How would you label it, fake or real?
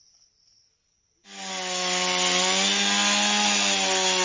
real